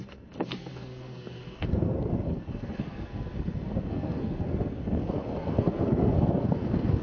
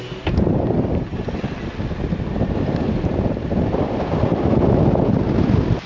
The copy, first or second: first